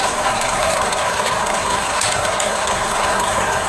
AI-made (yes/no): yes